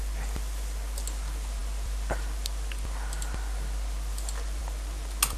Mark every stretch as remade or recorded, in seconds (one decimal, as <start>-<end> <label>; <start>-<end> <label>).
0.0-5.4 recorded